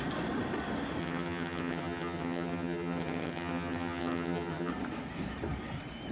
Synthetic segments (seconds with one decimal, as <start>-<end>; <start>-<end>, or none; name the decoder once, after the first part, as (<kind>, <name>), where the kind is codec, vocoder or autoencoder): 1.0-4.7 (vocoder, HiFi-GAN)